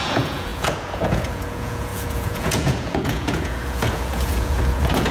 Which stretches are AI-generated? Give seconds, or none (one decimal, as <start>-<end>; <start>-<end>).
0.0-5.1